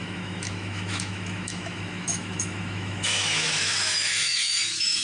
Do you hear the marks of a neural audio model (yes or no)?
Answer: yes